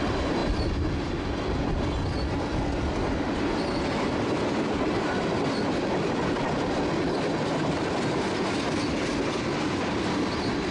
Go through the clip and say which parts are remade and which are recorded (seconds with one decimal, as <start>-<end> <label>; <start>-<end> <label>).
0.0-10.7 recorded